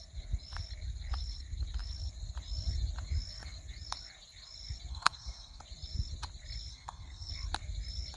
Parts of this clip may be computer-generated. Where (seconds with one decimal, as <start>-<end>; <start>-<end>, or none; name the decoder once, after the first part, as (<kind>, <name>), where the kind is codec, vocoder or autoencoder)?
4.9-5.6 (codec, SNAC); 6.7-7.3